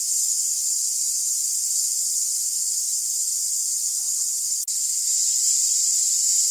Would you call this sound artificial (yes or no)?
no